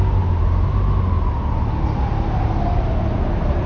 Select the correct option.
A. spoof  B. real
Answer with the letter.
B